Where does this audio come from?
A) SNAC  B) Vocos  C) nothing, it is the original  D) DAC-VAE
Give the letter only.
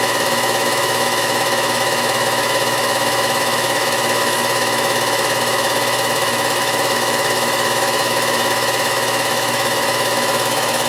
D